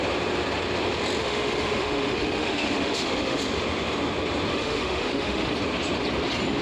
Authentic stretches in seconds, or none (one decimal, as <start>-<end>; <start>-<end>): 0.0-1.2; 3.4-4.5; 5.5-6.6